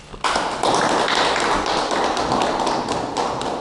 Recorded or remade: recorded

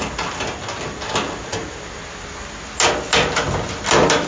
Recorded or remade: recorded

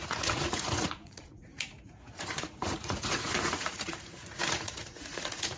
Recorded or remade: remade